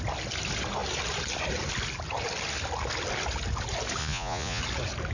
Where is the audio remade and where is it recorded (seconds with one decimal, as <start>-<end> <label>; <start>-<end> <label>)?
0.0-4.0 recorded; 4.0-4.6 remade; 4.6-5.1 recorded